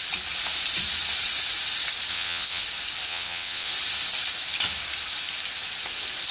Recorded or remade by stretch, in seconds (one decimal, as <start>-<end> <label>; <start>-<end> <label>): 0.0-2.1 recorded; 2.1-2.6 remade; 2.6-3.1 recorded; 3.1-3.7 remade; 3.7-6.3 recorded